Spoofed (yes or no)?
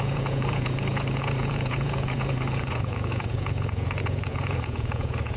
yes